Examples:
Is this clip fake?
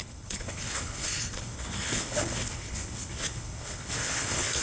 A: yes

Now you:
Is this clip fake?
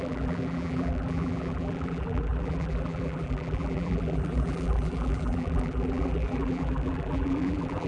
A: yes